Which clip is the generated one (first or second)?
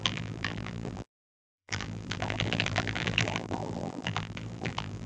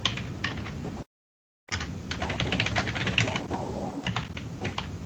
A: first